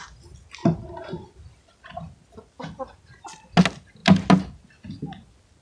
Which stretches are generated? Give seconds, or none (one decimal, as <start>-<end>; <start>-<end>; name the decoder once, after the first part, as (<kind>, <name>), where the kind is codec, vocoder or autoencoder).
none